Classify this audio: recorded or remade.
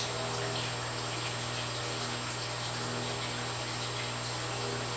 recorded